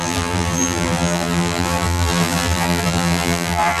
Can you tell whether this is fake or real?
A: fake